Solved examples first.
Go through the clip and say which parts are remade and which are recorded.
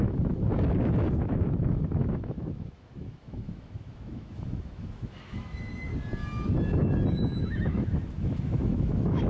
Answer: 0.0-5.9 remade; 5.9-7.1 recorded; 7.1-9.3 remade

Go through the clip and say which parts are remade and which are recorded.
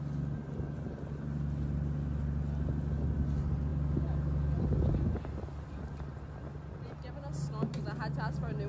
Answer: 0.0-8.7 recorded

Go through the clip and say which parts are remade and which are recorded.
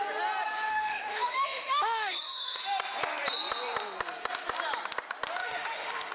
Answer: 0.0-0.7 recorded; 0.7-2.6 remade; 2.6-5.4 recorded; 5.4-6.1 remade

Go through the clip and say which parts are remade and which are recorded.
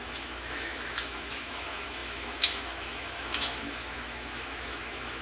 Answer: 0.0-5.2 remade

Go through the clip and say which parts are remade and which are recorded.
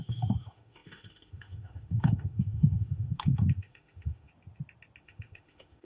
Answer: 0.0-4.3 remade; 4.3-5.0 recorded; 5.0-5.8 remade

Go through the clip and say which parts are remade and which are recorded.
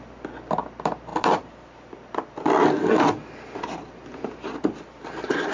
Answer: 0.0-5.5 recorded